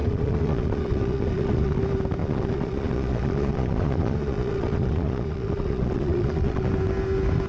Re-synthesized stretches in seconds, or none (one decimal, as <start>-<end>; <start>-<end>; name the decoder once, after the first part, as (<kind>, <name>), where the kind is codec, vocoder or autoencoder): 0.0-1.8 (vocoder, Vocos); 2.2-6.7